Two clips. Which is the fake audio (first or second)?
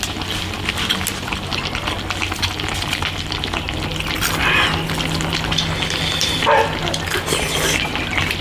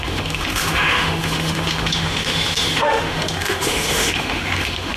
second